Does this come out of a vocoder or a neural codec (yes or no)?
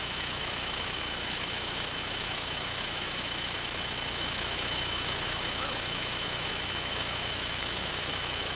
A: yes